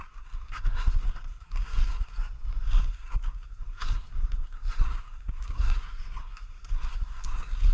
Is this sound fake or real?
fake